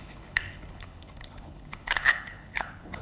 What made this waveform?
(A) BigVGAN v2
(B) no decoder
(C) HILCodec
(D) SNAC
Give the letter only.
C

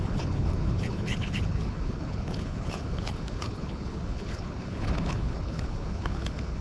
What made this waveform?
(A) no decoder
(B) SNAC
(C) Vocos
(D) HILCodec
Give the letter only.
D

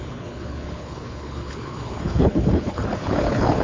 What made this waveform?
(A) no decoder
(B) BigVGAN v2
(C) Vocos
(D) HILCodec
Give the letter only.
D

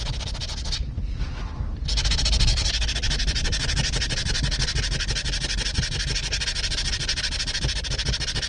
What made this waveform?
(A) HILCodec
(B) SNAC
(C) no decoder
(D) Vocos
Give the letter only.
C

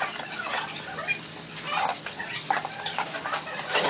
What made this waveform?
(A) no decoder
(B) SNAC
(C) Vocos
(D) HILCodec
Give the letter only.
A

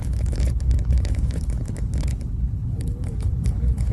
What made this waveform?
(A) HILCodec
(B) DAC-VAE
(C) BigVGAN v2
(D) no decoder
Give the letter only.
A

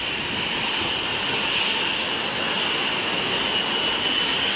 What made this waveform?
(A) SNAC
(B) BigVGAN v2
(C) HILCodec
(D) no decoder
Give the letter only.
D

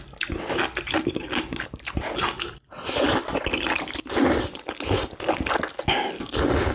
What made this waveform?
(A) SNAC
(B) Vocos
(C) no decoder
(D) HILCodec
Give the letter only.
C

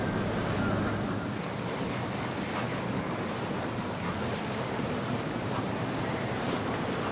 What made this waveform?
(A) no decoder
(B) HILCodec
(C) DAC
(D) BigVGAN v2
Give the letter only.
A